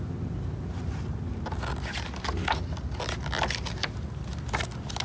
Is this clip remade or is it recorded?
recorded